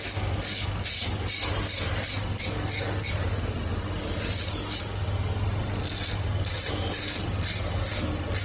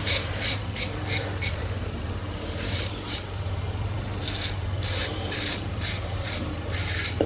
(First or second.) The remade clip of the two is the second